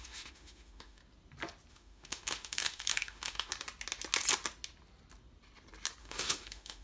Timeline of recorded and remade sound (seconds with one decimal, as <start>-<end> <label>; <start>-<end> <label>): 0.0-1.0 remade; 1.0-1.7 recorded; 1.7-3.5 remade; 3.5-6.0 recorded; 6.0-6.8 remade